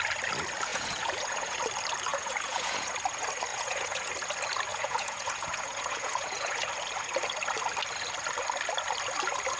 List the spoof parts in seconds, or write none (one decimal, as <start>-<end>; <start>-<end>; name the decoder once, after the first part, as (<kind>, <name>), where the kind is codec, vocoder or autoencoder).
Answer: 0.7-1.6 (vocoder, Vocos); 2.1-2.9; 3.5-4.1; 4.7-6.7